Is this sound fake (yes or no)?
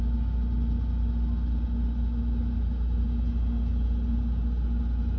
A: no